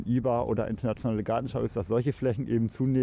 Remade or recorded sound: recorded